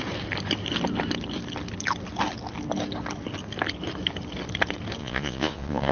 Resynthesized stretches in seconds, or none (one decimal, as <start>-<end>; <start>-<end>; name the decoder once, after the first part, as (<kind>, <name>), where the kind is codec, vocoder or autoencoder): 5.0-5.9 (vocoder, Vocos)